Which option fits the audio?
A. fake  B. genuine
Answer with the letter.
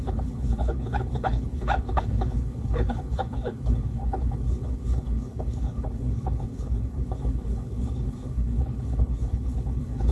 A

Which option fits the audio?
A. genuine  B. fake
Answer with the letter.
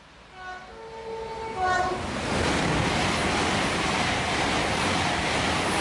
A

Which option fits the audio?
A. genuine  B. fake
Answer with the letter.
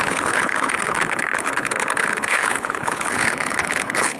B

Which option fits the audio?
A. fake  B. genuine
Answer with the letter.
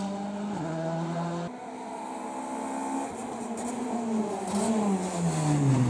B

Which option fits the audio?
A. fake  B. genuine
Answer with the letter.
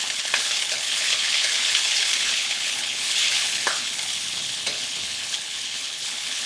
A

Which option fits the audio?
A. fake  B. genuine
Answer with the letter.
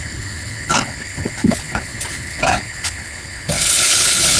A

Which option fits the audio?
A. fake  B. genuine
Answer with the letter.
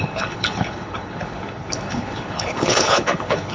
A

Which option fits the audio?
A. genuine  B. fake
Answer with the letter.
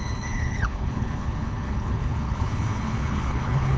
B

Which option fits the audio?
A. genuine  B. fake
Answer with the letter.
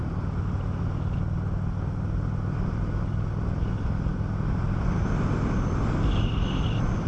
A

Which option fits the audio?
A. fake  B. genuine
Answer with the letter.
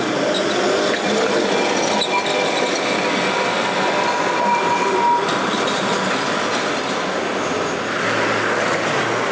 B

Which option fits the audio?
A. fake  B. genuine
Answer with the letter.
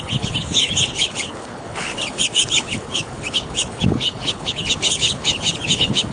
A